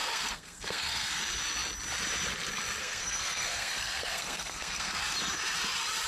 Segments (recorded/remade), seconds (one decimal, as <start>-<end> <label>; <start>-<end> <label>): 0.0-1.2 remade; 1.2-2.8 recorded; 2.8-5.0 remade; 5.0-6.1 recorded